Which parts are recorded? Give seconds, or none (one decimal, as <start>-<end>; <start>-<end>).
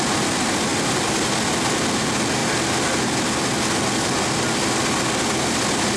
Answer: 0.0-6.0